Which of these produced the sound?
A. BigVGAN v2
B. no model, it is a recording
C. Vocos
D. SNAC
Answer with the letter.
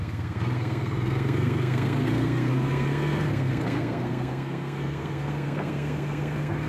D